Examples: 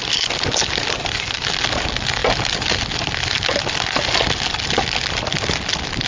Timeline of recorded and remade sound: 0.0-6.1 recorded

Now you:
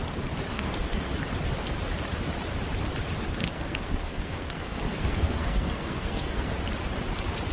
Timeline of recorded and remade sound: 0.0-0.5 recorded; 0.5-1.1 remade; 1.1-3.4 recorded; 3.4-6.5 remade; 6.5-7.5 recorded

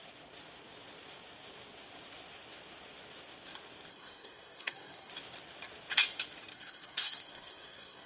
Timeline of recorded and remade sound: 0.0-3.9 recorded; 3.9-5.1 remade; 5.1-6.5 recorded; 6.5-8.1 remade

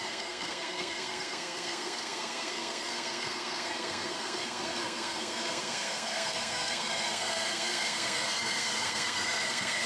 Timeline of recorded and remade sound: 0.0-9.9 remade

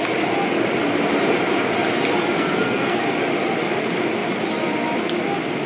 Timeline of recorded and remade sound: 0.0-2.3 recorded; 2.3-3.0 remade; 3.0-5.7 recorded

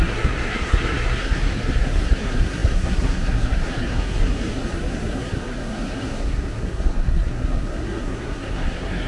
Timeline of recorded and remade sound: 0.0-9.1 remade